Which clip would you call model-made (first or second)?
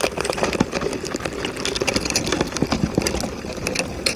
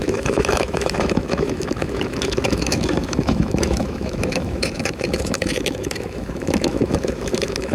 second